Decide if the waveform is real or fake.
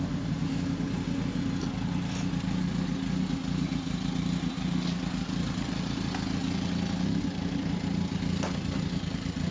real